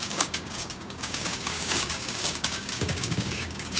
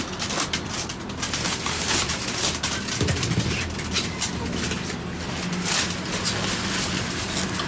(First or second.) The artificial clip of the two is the first